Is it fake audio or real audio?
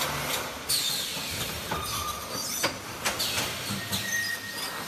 real